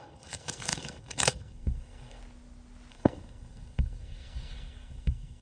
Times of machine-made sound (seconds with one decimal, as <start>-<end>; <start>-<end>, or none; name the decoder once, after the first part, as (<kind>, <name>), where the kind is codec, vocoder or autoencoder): 0.0-2.2 (codec, SNAC); 2.9-5.4